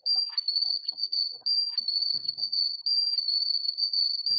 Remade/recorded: recorded